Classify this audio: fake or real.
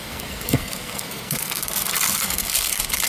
fake